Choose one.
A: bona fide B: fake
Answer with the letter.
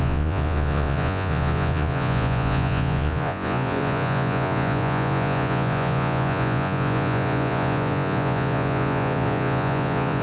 B